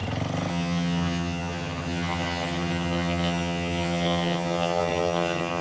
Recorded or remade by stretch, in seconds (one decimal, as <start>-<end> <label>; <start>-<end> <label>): 0.0-0.5 recorded; 0.5-5.6 remade